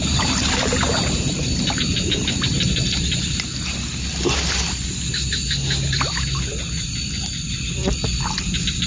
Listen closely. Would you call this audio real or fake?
real